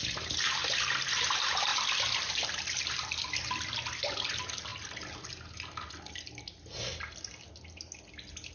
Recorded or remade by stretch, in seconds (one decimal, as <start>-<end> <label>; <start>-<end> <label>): 0.0-8.5 recorded